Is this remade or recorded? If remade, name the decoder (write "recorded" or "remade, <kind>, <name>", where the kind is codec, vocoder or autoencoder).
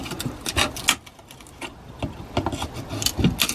recorded